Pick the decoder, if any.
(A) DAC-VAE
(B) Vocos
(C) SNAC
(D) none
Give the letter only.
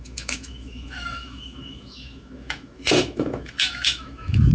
A